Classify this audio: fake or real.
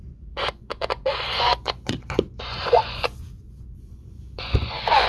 fake